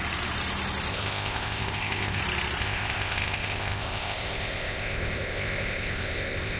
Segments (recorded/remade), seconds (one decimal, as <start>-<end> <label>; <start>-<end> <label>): 0.0-0.9 recorded; 0.9-2.2 remade; 2.2-2.6 recorded; 2.6-6.6 remade